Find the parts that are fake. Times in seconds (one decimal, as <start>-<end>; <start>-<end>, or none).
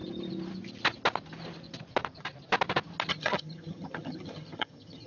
3.1-5.1